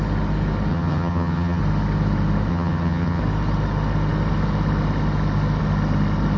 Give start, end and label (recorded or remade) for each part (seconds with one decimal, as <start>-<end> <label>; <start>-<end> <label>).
0.0-0.7 recorded; 0.7-1.6 remade; 1.6-2.5 recorded; 2.5-3.2 remade; 3.2-6.4 recorded